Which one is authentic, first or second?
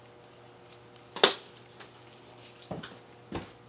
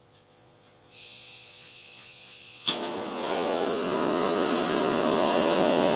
first